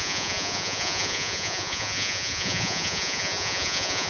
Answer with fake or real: fake